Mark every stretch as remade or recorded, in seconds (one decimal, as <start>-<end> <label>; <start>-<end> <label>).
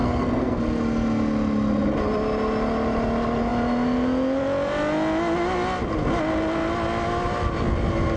0.0-0.6 remade; 0.6-8.2 recorded